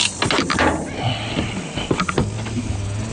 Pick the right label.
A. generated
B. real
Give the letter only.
B